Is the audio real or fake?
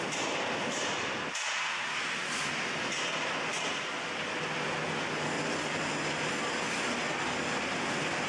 real